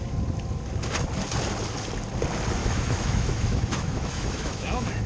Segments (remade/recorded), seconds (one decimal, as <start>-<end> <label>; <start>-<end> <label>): 0.0-2.6 recorded; 2.6-5.1 remade

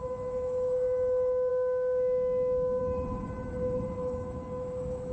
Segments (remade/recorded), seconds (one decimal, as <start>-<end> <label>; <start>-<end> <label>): 0.0-1.5 remade; 1.5-2.8 recorded; 2.8-5.1 remade